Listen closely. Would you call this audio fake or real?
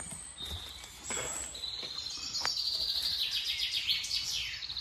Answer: real